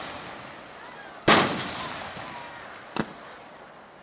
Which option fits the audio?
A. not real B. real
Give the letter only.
B